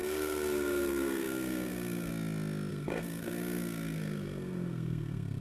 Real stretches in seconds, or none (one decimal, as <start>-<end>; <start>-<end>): 2.1-2.7